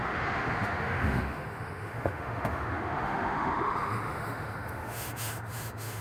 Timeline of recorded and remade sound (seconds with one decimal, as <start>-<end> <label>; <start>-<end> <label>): 0.0-6.0 remade